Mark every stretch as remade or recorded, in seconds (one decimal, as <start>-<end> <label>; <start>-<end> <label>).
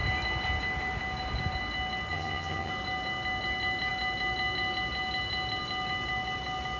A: 0.0-2.1 recorded; 2.1-2.7 remade; 2.7-6.8 recorded